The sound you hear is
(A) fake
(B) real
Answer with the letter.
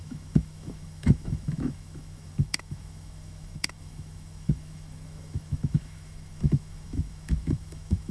A